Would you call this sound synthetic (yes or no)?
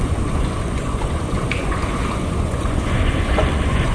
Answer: yes